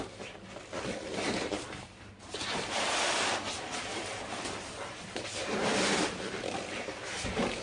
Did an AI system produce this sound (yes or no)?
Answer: yes